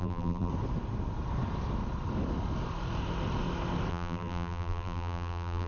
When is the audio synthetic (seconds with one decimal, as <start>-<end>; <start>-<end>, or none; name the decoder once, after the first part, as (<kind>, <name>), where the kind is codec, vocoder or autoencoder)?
0.0-0.5 (vocoder, BigVGAN v2); 3.9-5.7